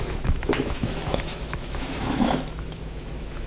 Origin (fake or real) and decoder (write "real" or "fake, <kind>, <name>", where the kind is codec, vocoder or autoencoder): fake, autoencoder, DAC-VAE